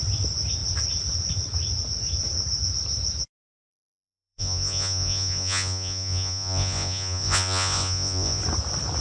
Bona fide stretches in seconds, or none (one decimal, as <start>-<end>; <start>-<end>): 0.0-3.7; 8.4-9.0